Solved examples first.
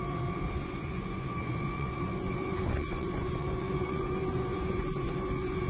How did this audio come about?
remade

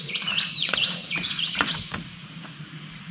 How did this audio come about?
remade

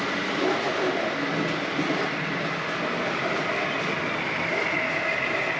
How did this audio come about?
recorded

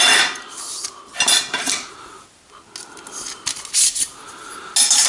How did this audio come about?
recorded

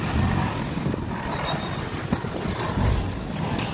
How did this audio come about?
recorded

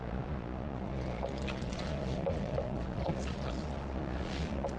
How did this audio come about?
remade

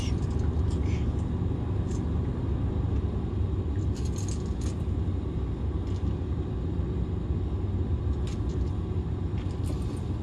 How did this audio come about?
recorded